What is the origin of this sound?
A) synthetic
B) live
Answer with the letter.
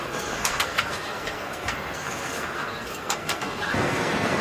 A